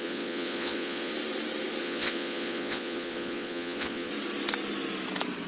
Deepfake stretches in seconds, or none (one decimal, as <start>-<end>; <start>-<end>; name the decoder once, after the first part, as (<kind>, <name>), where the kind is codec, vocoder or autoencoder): 0.0-1.1 (vocoder, Vocos); 1.8-4.1